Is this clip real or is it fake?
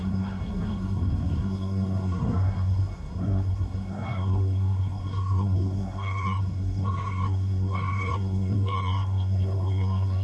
fake